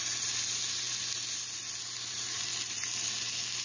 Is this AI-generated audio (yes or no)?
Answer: no